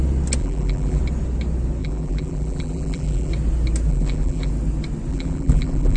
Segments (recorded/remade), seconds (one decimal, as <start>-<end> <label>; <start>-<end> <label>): 0.0-0.4 recorded; 0.4-1.0 remade; 1.0-1.8 recorded; 1.8-3.3 remade; 3.3-3.9 recorded; 3.9-4.5 remade; 4.5-5.1 recorded; 5.1-6.0 remade